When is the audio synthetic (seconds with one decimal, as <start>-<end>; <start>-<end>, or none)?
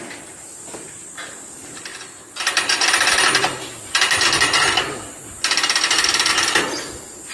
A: none